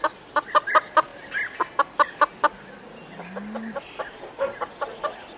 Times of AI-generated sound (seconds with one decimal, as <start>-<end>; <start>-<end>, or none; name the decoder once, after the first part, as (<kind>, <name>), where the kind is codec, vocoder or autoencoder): none